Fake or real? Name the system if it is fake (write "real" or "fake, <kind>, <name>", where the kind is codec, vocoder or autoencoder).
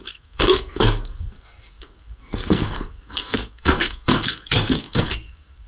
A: fake, codec, SNAC